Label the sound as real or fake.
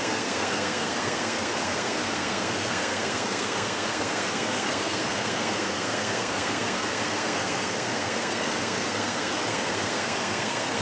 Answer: fake